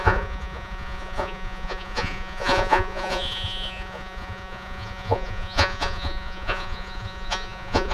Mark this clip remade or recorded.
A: remade